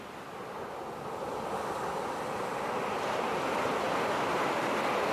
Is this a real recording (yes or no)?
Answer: yes